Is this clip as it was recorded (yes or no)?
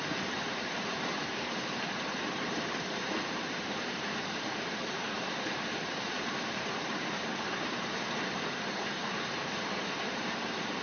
no